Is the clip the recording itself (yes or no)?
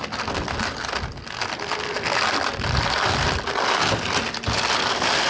yes